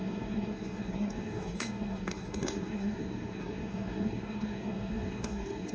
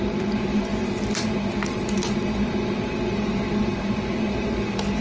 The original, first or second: second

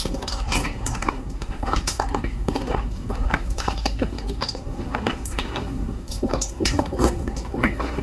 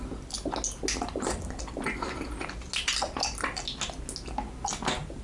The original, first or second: second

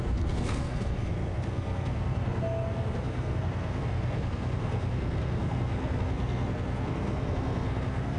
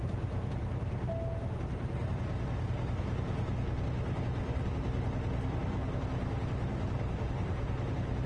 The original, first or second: second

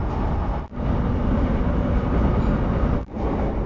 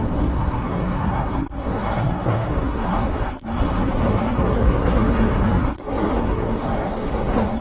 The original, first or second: first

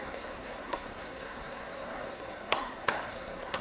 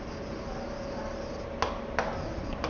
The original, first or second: second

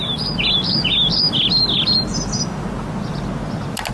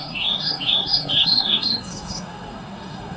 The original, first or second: first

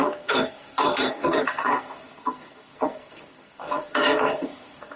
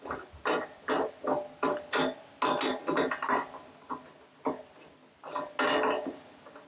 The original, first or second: second